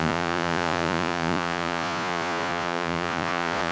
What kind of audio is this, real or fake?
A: fake